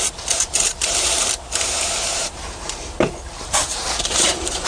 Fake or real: fake